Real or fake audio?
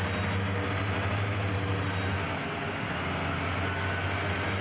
real